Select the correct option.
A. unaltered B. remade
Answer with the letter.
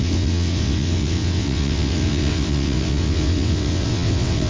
B